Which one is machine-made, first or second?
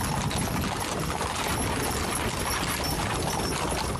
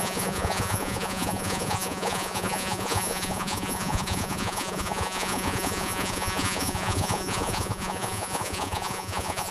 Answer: second